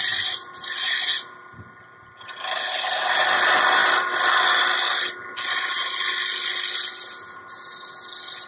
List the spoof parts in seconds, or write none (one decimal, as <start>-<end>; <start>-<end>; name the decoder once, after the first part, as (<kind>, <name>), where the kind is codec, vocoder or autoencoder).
none